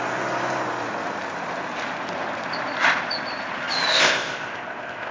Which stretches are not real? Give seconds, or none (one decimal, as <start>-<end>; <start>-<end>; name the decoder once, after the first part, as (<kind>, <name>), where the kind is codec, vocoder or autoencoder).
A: 3.9-5.1 (codec, ZipCodec)